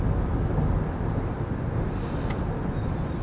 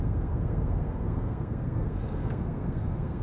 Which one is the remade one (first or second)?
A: second